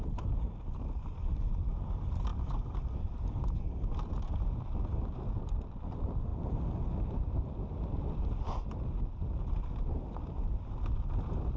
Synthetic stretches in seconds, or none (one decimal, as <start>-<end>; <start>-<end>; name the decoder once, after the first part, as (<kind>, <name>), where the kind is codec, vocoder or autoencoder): none